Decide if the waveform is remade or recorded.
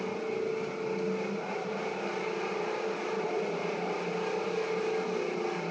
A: recorded